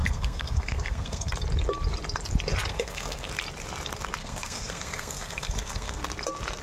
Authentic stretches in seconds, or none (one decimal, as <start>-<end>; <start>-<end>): 1.3-2.7; 3.3-4.2; 6.0-6.6